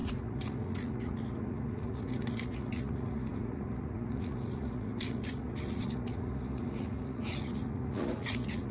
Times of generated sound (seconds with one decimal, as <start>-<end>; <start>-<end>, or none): 0.0-8.7